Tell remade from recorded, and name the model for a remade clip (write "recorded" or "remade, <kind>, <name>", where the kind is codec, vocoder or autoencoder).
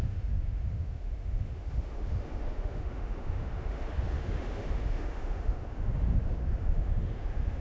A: remade, autoencoder, DAC-VAE